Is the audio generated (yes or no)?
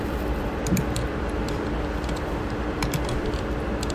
yes